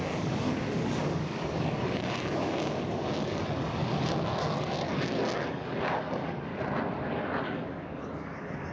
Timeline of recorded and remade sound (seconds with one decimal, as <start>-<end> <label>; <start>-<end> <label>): 0.0-3.8 remade; 3.8-5.5 recorded; 5.5-6.5 remade; 6.5-7.4 recorded; 7.4-8.7 remade